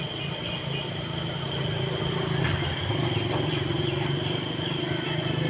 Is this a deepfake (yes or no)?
no